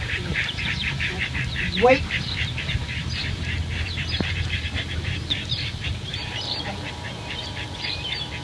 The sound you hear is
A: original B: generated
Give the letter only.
B